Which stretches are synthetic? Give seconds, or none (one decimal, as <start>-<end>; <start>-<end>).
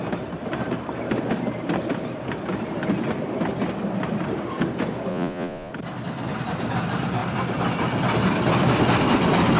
5.1-5.7